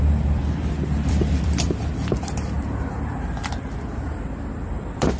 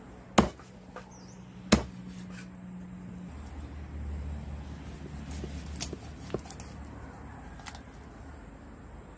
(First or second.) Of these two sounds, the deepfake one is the first